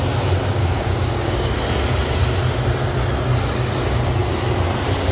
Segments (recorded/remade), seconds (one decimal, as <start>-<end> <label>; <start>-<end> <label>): 0.0-0.6 recorded; 0.6-1.6 remade; 1.6-5.1 recorded